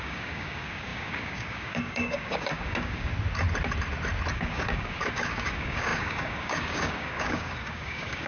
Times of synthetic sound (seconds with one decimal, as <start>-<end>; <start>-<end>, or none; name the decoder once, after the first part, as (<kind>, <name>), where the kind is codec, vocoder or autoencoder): 0.0-3.1 (codec, DAC); 4.3-8.3